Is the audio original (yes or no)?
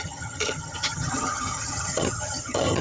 no